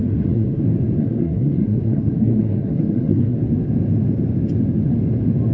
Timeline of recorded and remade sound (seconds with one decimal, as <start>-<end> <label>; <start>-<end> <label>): 0.0-0.6 remade; 0.6-1.0 recorded; 1.0-3.4 remade; 3.4-5.5 recorded